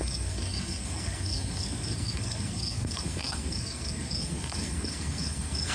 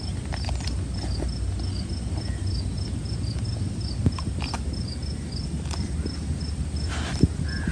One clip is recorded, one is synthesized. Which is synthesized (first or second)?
first